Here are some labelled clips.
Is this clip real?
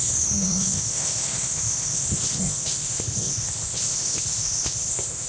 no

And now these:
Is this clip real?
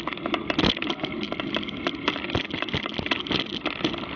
yes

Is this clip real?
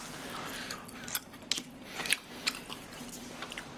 yes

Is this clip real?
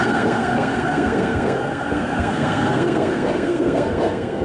no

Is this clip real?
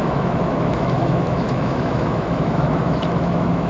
no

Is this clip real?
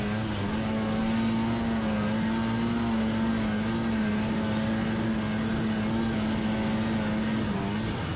yes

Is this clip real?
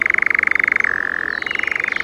yes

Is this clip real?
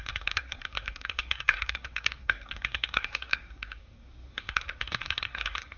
no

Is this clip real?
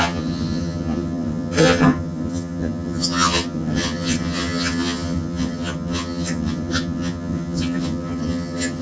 no